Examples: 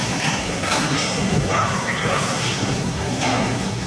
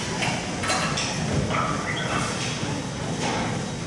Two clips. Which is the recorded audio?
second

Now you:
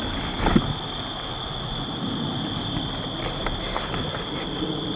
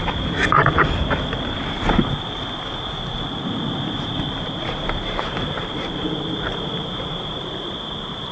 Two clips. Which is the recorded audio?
first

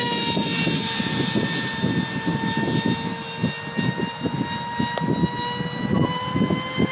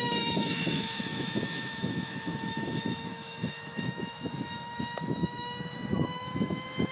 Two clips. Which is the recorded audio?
first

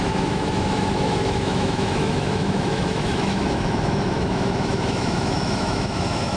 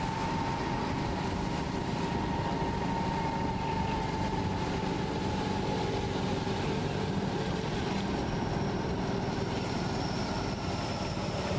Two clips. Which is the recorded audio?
second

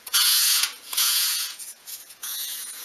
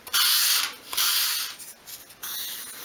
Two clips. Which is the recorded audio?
second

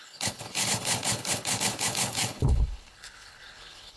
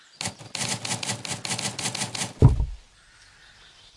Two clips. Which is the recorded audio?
second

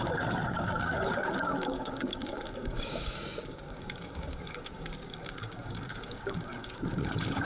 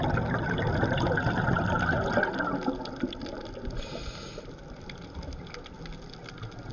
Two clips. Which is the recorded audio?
second